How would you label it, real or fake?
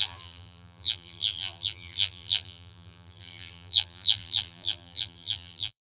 fake